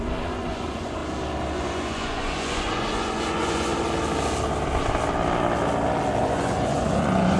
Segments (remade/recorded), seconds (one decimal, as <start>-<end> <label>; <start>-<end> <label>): 0.0-1.0 remade; 1.0-1.5 recorded; 1.5-3.7 remade; 3.7-6.2 recorded; 6.2-7.4 remade